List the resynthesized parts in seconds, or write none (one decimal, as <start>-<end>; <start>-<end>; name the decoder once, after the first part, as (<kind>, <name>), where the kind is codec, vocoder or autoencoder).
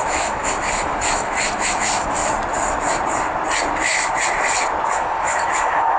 0.0-2.2 (autoencoder, DAC-VAE); 4.9-6.0